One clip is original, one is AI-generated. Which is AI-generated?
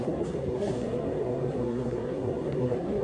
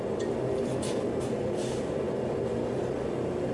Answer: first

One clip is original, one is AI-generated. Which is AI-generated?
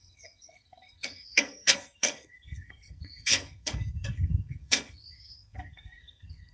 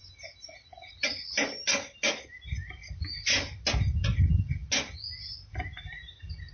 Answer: first